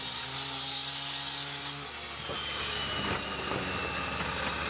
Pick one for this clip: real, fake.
real